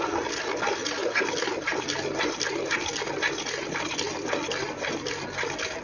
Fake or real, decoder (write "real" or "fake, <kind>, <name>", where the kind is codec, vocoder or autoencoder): real